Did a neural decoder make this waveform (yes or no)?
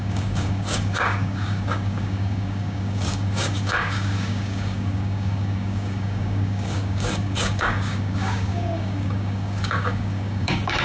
yes